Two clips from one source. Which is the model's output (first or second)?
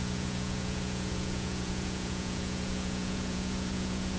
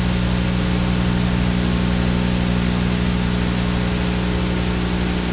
first